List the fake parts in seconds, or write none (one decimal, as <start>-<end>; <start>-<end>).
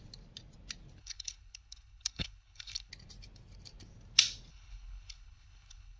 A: 1.0-2.9; 4.5-6.0